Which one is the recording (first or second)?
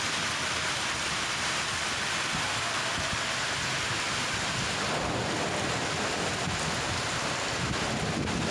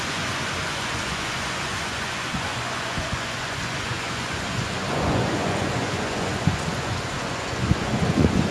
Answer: first